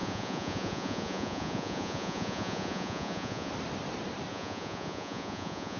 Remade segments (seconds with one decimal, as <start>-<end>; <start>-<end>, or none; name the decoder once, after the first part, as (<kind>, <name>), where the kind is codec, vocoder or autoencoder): 0.0-3.5 (vocoder, Vocos); 4.3-5.8